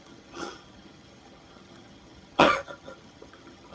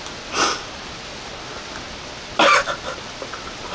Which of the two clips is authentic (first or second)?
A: second